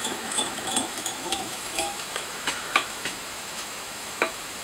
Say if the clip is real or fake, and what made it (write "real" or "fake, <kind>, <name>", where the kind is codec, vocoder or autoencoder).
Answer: fake, autoencoder, DAC-VAE